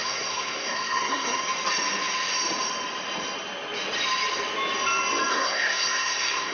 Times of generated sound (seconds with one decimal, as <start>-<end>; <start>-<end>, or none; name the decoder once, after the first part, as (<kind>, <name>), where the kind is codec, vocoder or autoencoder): 0.0-1.4 (codec, SNAC); 5.3-6.5